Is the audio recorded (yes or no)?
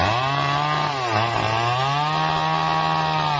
yes